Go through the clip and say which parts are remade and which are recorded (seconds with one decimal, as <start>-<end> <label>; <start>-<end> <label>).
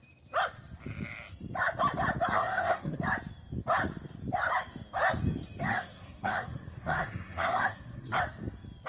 0.0-2.3 recorded; 2.3-3.0 remade; 3.0-5.7 recorded; 5.7-8.2 remade; 8.2-8.9 recorded